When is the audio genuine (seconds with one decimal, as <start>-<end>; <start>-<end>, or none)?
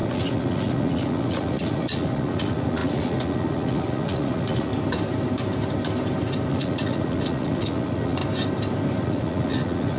4.7-6.5; 8.2-9.0